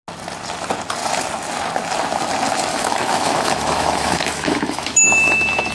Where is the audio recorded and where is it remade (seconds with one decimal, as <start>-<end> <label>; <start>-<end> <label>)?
0.0-2.7 recorded; 2.7-5.7 remade